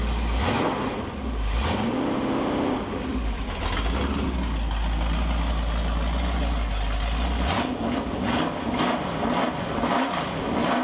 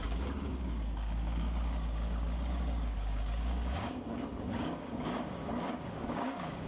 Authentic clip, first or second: first